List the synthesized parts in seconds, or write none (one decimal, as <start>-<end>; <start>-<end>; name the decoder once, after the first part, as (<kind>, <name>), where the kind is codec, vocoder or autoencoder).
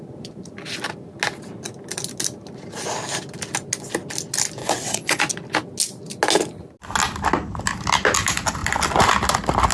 4.6-5.2 (vocoder, WaveNeXt)